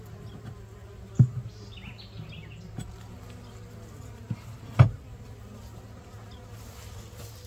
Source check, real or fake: real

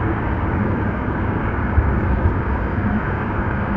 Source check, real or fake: fake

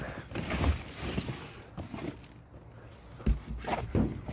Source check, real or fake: real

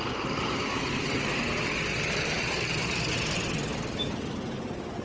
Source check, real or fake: real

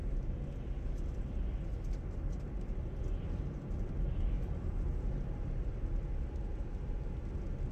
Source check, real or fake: real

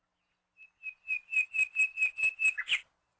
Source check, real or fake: real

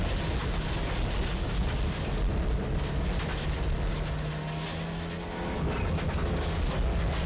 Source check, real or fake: real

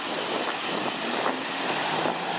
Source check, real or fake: real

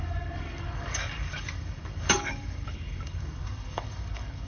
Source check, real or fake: fake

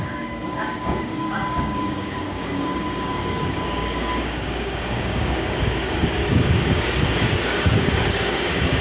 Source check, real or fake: fake